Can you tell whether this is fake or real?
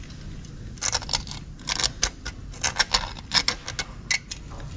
real